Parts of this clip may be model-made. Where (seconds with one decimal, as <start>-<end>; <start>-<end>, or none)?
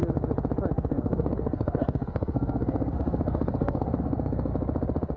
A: 0.7-4.5